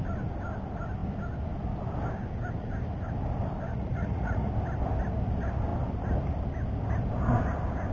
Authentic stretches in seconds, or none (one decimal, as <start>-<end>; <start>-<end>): 0.0-3.7; 4.5-7.9